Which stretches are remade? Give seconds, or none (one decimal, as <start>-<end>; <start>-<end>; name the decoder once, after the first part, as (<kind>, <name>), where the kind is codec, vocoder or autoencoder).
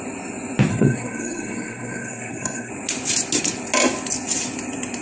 0.7-2.7 (codec, SNAC)